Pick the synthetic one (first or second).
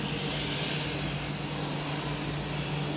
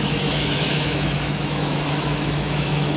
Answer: second